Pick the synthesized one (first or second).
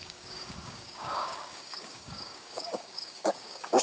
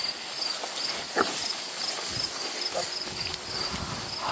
first